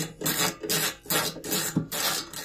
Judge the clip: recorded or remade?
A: recorded